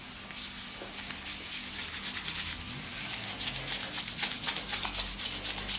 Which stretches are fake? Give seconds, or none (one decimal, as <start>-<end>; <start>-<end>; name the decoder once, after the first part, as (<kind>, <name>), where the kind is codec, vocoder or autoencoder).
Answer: none